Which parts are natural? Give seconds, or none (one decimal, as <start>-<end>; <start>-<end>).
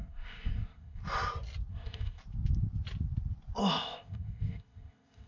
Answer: 1.0-1.7; 2.2-3.6